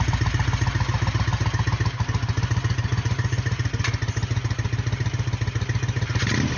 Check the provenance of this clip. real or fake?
real